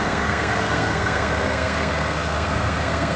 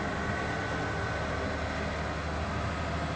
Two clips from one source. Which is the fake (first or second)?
first